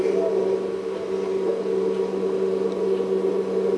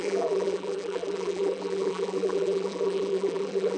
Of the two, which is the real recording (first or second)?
first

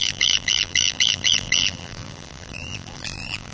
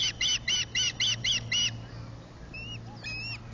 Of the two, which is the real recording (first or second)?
second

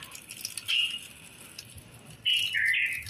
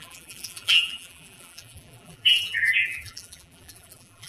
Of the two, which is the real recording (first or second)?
first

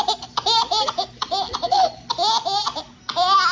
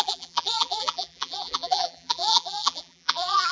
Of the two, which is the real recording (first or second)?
first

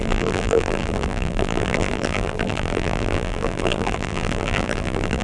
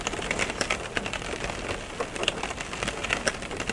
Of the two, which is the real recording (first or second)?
second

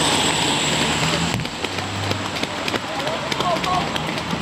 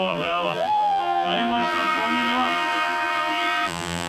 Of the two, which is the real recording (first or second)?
first